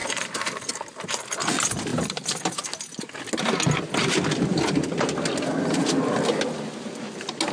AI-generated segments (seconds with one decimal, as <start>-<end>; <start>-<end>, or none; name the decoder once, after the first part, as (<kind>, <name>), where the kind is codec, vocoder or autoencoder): 0.0-0.7 (vocoder, BigVGAN v2); 1.9-2.6

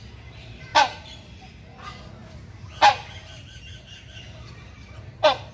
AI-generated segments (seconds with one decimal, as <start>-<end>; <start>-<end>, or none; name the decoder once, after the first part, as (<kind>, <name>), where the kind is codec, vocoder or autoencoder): none

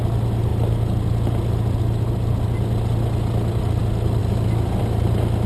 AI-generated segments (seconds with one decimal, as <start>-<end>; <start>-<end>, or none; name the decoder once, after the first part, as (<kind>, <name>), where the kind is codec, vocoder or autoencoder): none

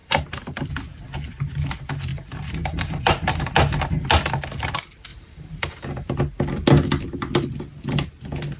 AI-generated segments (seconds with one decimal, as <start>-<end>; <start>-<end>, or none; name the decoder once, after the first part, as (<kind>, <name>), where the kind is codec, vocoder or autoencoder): 0.0-0.7 (vocoder, BigVGAN v2); 2.1-3.3; 5.1-6.2

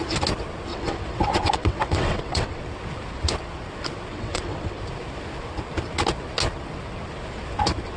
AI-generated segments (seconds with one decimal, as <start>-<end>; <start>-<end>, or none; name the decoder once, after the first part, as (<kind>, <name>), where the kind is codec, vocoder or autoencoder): 0.7-2.6 (vocoder, WaveNeXt); 4.1-4.8